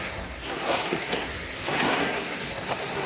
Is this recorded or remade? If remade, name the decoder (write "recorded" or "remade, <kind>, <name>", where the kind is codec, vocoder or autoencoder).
remade, codec, SNAC